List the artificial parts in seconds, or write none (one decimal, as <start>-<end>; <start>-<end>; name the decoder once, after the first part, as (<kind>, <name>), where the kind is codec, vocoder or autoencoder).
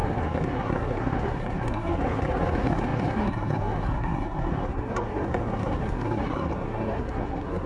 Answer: 0.0-7.7 (codec, SNAC)